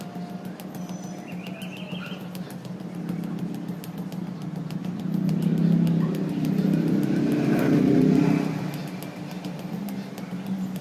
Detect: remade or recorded recorded